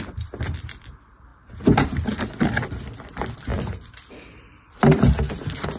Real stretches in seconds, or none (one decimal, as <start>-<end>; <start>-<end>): 1.3-2.4